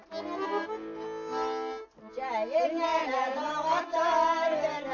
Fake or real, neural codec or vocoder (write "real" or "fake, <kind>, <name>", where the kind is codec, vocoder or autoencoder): real